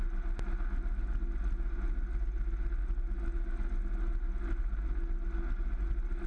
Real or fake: real